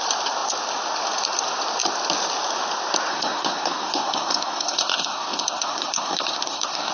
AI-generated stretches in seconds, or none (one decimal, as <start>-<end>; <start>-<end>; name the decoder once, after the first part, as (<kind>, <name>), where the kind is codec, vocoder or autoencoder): 3.1-6.9 (codec, SNAC)